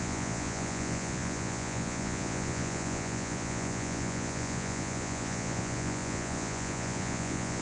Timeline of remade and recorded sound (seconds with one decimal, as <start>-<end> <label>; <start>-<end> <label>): 0.0-7.6 remade